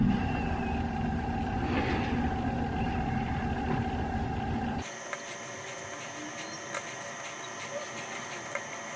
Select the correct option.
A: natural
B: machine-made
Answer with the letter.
A